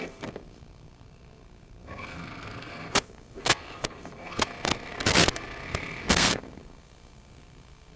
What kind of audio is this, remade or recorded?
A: remade